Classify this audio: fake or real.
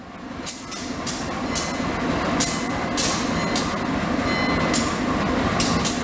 real